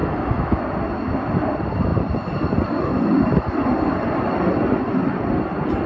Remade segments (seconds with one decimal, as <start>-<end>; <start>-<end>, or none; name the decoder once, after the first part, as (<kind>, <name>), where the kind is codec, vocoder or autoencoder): 0.0-0.6 (autoencoder, DAC-VAE)